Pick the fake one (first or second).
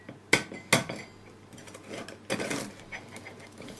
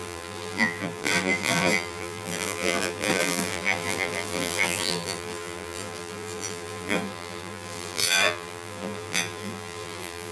second